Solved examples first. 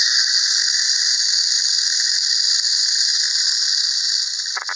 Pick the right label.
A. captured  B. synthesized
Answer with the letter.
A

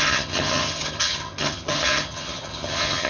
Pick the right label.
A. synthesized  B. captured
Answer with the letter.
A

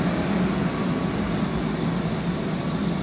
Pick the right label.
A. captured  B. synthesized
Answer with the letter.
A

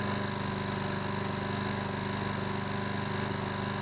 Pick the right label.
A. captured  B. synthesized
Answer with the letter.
A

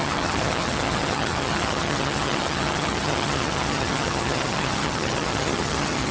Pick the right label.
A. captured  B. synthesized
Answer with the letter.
B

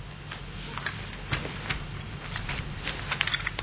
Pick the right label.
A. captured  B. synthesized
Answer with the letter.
A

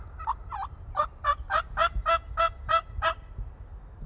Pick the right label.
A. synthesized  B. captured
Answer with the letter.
B